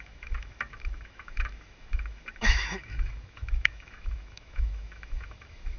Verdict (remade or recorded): remade